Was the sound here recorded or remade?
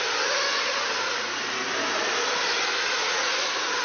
recorded